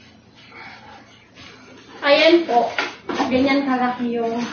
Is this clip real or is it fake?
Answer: real